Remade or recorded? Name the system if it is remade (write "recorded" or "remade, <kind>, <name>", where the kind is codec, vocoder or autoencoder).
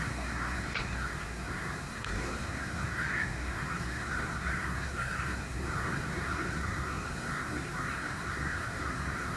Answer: remade, codec, SNAC